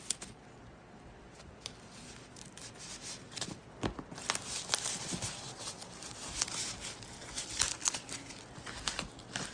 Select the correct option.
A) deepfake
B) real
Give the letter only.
B